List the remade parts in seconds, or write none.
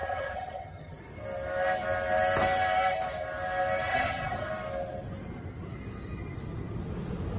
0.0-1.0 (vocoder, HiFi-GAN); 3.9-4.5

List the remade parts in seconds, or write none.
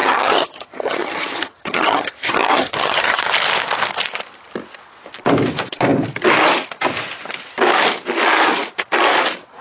0.0-3.2 (vocoder, HiFi-GAN)